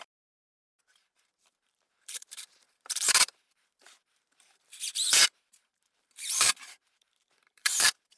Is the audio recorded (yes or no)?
no